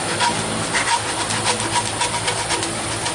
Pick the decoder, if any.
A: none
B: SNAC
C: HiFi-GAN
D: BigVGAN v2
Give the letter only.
A